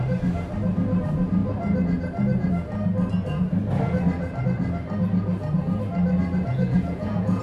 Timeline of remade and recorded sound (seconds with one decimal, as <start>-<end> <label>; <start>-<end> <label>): 0.0-6.5 recorded; 6.5-7.4 remade